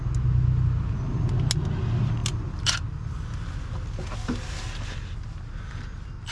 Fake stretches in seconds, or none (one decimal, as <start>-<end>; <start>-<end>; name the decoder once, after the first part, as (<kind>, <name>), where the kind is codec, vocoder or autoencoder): none